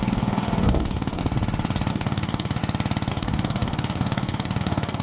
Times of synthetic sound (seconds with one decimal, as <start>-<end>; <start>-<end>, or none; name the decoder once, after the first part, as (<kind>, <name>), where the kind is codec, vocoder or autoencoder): 0.0-1.2 (codec, DAC); 1.9-2.6; 3.1-5.0